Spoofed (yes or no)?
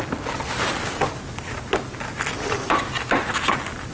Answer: no